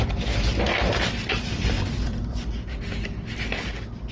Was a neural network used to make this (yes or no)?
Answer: no